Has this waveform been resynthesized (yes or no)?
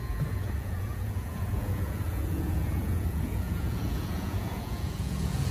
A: yes